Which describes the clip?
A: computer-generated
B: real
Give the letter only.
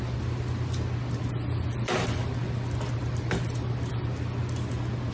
B